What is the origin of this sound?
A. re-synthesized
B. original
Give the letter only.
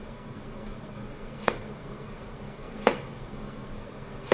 A